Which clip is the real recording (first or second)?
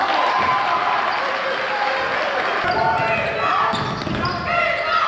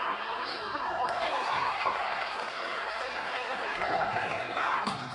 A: first